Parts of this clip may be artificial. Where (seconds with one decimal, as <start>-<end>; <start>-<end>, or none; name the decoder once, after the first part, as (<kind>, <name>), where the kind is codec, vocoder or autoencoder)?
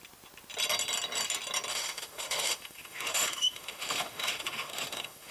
1.7-5.3 (autoencoder, DAC-VAE)